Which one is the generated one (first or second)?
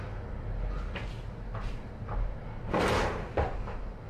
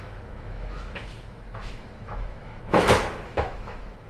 second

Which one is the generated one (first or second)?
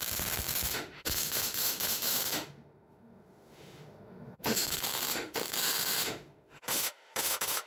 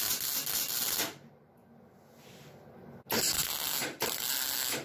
first